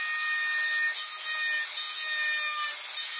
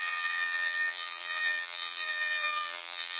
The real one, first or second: first